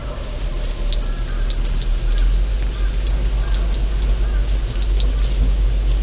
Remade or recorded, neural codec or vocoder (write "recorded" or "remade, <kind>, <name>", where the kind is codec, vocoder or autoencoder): recorded